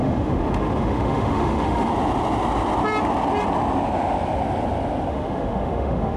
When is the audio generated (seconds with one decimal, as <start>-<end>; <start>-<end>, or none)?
0.0-1.9; 5.1-6.2